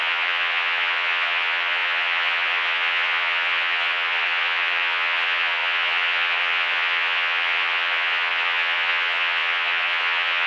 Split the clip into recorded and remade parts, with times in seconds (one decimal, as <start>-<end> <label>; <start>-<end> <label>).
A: 0.0-10.5 remade

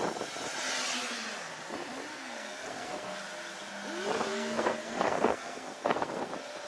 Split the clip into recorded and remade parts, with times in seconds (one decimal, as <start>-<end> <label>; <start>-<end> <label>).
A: 0.0-2.1 recorded; 2.1-3.2 remade; 3.2-4.3 recorded; 4.3-6.3 remade; 6.3-6.7 recorded